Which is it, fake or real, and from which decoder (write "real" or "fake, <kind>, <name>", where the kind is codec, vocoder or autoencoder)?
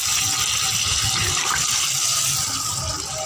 real